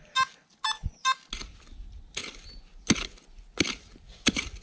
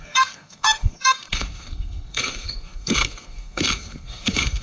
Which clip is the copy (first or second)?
second